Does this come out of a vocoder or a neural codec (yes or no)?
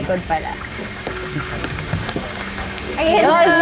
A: yes